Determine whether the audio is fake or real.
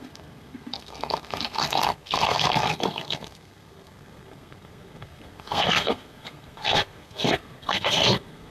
fake